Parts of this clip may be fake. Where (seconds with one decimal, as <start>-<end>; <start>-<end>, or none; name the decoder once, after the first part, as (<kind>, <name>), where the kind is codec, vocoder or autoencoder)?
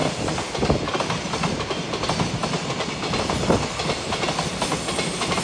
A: none